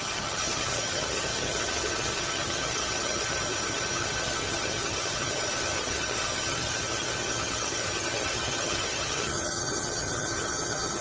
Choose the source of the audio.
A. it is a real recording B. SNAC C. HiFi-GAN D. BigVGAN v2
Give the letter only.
C